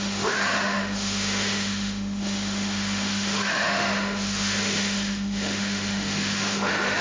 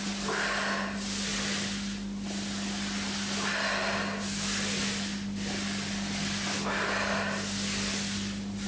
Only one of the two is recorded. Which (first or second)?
second